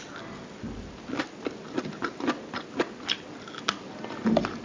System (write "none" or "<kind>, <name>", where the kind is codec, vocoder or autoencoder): none